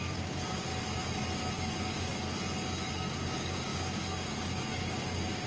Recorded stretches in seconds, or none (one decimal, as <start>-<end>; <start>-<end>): 0.7-1.5; 2.1-2.9